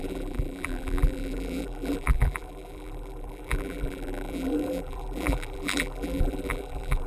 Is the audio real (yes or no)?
no